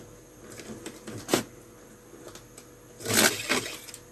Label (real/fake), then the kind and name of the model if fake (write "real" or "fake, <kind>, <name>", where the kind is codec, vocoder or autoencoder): real